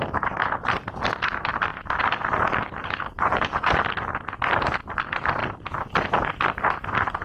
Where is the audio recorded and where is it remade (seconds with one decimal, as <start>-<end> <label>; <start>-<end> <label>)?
0.0-1.7 remade; 1.7-4.8 recorded; 4.8-5.4 remade; 5.4-6.1 recorded; 6.1-7.2 remade